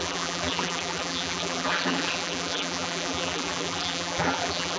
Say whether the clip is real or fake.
fake